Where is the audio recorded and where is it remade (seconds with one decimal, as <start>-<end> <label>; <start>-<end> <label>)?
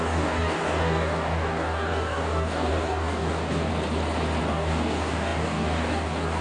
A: 0.0-3.7 remade; 3.7-4.4 recorded; 4.4-6.4 remade